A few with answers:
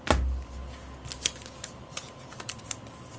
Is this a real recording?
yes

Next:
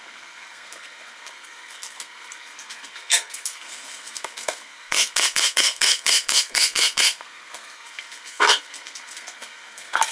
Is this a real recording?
no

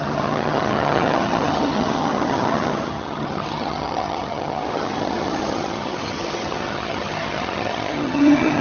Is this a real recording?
no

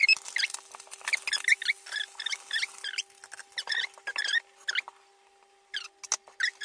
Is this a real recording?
yes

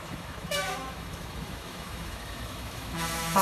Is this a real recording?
no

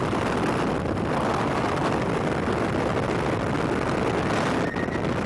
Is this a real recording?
yes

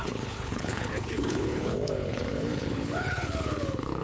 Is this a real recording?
no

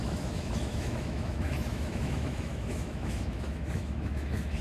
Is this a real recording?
no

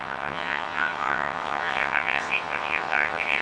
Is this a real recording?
no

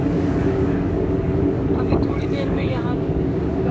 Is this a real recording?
no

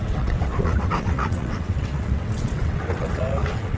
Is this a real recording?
no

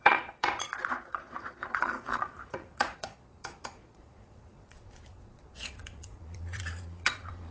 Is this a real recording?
no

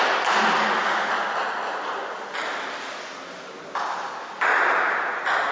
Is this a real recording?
yes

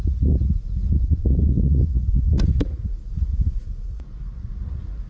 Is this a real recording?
no